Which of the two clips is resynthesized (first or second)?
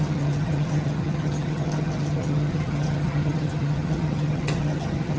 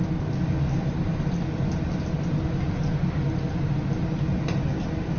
first